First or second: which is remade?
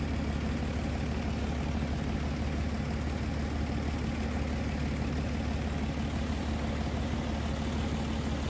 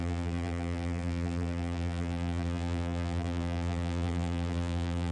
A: second